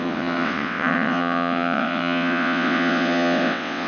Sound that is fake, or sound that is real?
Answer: fake